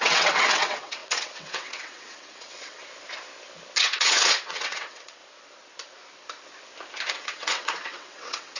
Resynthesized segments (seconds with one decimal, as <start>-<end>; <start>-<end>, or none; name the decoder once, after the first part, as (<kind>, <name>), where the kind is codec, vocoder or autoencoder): 0.0-2.8 (vocoder, WaveNeXt); 3.8-5.2; 7.1-8.6